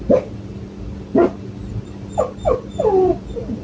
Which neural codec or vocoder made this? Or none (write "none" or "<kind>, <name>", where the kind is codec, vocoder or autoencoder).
none